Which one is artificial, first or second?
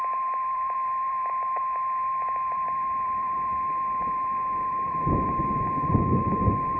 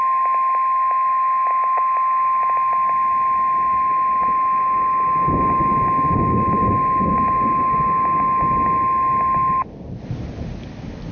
first